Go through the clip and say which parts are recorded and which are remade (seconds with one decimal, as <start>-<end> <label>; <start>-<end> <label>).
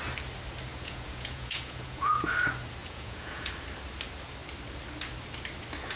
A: 0.0-0.7 recorded; 0.7-2.3 remade; 2.3-2.8 recorded; 2.8-3.5 remade; 3.5-6.0 recorded